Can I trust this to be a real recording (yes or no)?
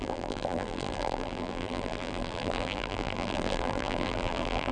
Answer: no